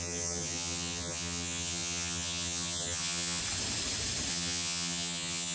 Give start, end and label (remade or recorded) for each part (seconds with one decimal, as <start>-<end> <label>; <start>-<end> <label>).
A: 0.0-3.4 remade; 3.4-4.3 recorded; 4.3-5.5 remade